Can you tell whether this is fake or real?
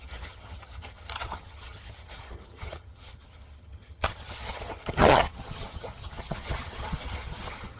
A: fake